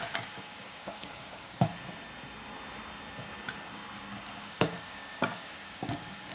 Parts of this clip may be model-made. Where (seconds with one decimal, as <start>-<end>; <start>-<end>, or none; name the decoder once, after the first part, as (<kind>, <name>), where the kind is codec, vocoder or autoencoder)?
0.0-1.7 (codec, DAC); 4.4-6.3